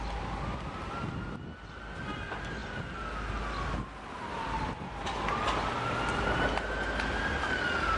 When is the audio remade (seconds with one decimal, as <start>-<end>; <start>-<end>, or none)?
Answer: none